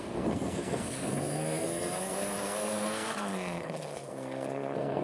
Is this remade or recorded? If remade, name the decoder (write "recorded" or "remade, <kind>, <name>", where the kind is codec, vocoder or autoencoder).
remade, codec, SNAC